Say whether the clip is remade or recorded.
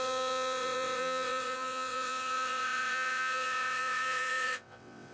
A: remade